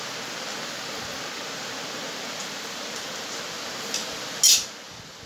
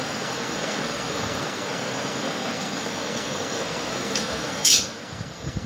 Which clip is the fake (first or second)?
second